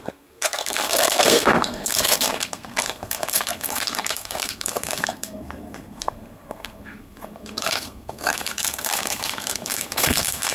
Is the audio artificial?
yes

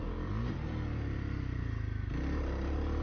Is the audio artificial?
no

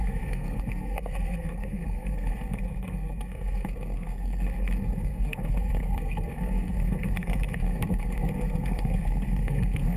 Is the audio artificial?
yes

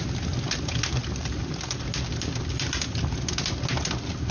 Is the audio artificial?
no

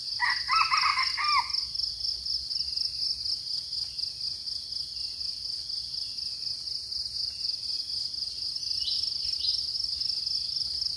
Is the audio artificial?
no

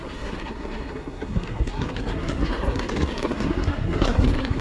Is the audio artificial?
yes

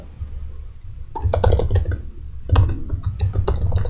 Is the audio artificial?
no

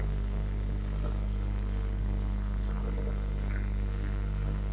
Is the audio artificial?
yes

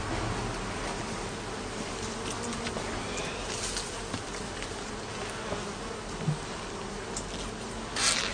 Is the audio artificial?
no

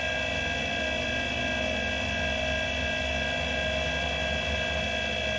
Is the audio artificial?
no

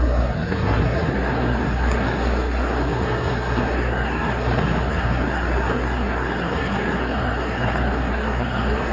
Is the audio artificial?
yes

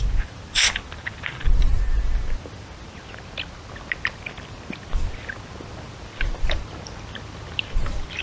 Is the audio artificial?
no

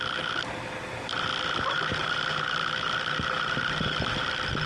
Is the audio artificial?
no